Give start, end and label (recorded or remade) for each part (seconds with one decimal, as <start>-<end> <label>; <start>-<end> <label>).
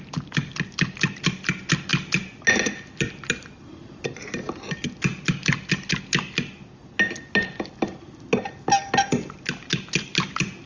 0.0-10.7 recorded